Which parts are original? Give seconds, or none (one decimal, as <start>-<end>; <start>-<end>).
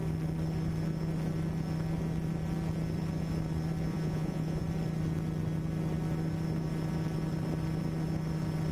0.0-3.9; 4.6-8.7